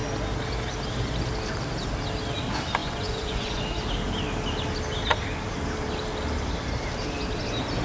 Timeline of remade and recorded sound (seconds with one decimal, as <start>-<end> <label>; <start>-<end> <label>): 0.0-2.8 recorded; 2.8-3.6 remade; 3.6-7.8 recorded